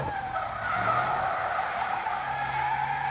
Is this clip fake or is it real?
real